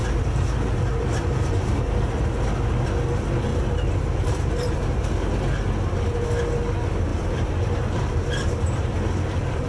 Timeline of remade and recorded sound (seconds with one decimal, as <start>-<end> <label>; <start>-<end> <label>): 0.0-2.2 remade; 2.2-3.5 recorded; 3.5-5.2 remade; 5.2-7.1 recorded; 7.1-9.7 remade